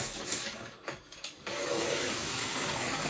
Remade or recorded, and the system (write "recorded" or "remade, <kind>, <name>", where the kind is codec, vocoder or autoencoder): remade, codec, DAC